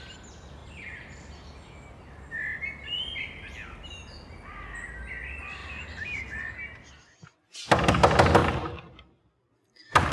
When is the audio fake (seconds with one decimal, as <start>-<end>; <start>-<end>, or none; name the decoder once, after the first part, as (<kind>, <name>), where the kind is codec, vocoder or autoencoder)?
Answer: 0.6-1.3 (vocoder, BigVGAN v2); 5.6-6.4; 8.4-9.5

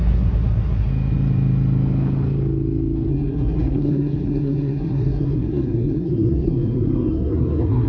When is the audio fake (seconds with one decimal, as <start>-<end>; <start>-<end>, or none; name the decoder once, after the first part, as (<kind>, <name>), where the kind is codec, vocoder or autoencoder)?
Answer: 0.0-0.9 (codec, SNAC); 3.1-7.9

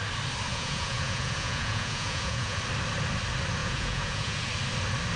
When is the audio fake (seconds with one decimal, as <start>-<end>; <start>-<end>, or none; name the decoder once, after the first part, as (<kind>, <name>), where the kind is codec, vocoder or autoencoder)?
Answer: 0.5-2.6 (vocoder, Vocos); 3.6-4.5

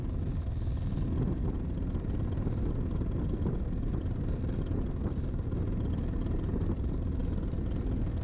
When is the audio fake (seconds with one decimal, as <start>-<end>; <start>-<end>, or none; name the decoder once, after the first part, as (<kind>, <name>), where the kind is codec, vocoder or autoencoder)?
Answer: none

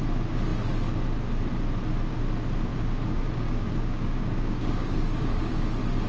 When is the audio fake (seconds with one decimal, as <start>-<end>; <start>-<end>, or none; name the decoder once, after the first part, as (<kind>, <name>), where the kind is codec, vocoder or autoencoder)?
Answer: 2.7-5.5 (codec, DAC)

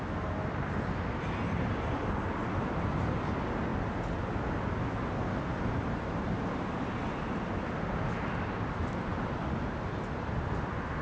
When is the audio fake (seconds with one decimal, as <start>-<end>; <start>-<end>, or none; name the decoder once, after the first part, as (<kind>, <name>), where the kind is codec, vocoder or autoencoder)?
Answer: none